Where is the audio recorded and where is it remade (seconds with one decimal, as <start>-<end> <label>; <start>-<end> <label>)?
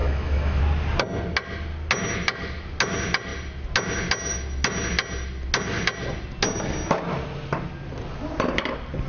0.0-0.6 remade; 0.6-9.1 recorded